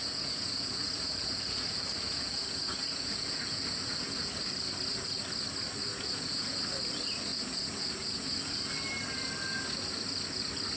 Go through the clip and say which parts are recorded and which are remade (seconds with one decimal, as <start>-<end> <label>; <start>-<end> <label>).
0.0-4.3 remade; 4.3-5.8 recorded; 5.8-6.6 remade; 6.6-7.3 recorded; 7.3-8.7 remade; 8.7-10.8 recorded